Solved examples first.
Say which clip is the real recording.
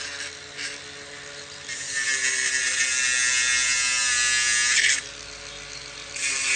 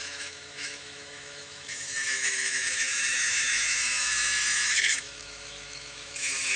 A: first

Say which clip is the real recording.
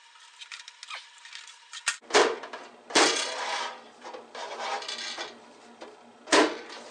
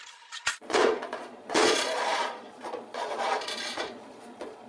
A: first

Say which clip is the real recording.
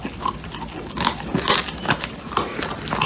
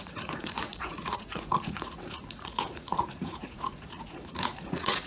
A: first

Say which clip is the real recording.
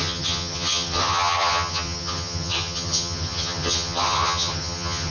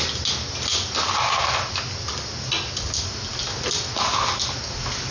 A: second